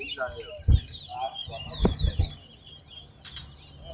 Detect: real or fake real